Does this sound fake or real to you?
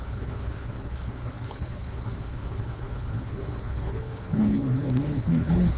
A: fake